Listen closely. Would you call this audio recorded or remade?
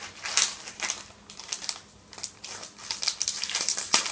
recorded